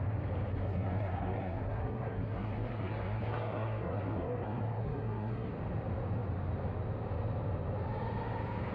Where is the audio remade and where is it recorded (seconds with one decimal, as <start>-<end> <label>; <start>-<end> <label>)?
0.0-0.5 recorded; 0.5-5.5 remade; 5.5-8.7 recorded